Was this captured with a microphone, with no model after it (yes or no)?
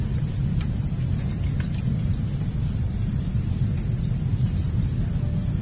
yes